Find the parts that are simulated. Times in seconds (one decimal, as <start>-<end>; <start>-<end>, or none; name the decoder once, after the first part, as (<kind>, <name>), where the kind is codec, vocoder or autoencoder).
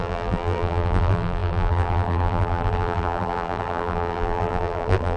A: 0.0-5.2 (vocoder, BigVGAN v2)